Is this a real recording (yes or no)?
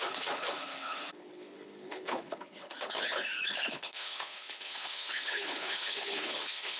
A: no